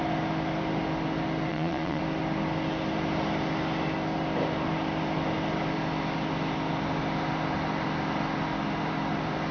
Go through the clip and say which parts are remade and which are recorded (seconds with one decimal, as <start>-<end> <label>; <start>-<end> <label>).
0.0-1.5 recorded; 1.5-2.0 remade; 2.0-9.5 recorded